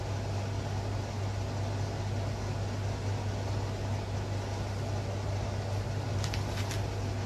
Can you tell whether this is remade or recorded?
recorded